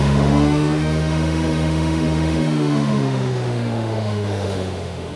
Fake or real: fake